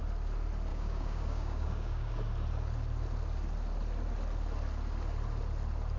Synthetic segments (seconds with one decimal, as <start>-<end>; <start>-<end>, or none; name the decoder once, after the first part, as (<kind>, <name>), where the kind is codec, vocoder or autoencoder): 0.7-2.1 (codec, DAC)